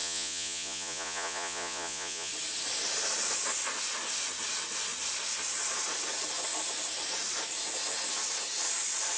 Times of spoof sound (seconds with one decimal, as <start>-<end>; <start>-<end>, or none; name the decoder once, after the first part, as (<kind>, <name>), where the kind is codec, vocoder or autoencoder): 0.0-2.3 (vocoder, Vocos)